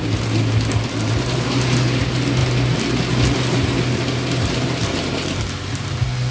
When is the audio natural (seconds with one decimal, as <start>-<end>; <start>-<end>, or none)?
0.0-6.3